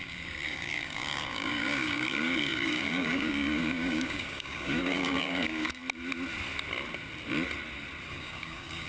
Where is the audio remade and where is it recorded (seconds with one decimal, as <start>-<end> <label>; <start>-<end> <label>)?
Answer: 0.0-5.8 remade; 5.8-8.1 recorded; 8.1-8.9 remade